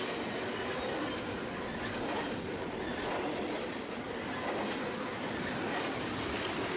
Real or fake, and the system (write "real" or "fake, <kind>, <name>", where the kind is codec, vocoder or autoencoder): real